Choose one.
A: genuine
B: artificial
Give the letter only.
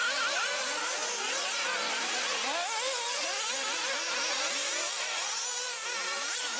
A